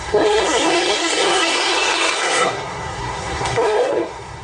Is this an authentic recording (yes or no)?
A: no